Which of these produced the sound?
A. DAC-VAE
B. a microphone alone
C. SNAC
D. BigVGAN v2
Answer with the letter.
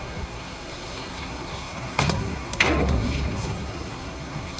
C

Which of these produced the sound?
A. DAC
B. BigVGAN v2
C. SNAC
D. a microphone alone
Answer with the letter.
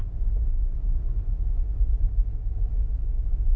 D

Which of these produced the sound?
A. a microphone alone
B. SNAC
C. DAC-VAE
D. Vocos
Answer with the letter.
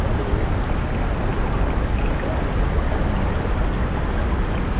A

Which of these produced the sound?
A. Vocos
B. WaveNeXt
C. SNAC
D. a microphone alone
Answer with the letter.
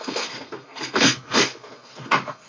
C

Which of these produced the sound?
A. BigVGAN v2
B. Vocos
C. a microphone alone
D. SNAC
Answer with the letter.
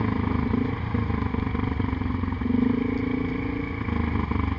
C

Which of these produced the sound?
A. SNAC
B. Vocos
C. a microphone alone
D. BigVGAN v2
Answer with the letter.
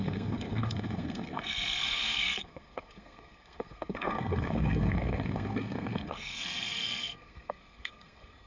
A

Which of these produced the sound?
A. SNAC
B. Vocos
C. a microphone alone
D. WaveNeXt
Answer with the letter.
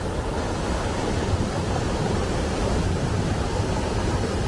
C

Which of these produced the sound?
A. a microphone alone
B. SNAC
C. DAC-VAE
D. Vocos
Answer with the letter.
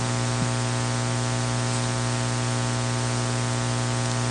A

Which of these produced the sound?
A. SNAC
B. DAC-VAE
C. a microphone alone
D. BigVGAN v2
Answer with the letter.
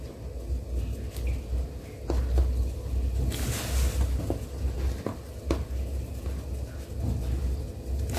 C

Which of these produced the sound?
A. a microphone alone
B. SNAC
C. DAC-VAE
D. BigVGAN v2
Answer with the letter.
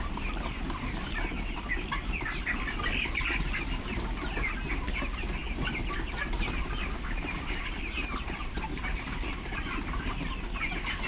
A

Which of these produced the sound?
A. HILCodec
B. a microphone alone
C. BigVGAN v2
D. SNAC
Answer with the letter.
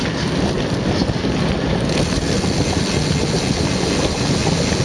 B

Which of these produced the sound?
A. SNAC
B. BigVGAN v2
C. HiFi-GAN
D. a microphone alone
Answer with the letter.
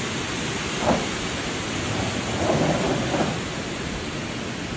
D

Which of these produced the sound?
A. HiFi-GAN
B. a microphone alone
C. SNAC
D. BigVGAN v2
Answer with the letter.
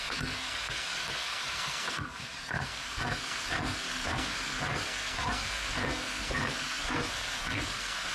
C